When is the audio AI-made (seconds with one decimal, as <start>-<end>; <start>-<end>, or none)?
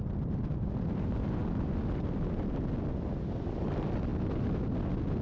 none